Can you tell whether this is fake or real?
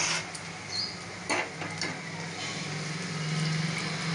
real